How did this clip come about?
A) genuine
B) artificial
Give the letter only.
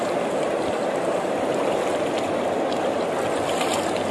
A